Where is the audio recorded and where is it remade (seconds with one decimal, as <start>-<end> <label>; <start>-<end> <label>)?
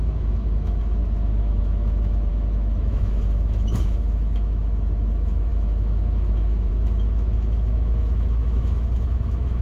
0.0-9.6 remade